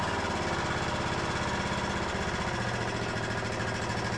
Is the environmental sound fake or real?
real